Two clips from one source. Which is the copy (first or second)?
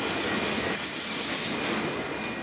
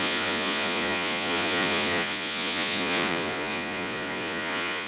second